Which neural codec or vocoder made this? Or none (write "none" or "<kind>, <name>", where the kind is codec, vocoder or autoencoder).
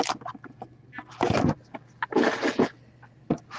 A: none